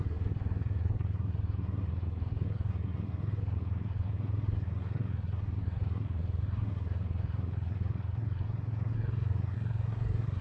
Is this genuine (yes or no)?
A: no